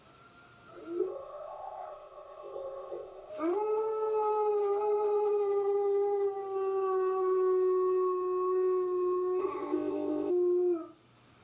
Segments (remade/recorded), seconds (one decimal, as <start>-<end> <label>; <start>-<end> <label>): 0.0-1.0 recorded; 1.0-3.3 remade; 3.3-9.4 recorded; 9.4-10.3 remade; 10.3-11.4 recorded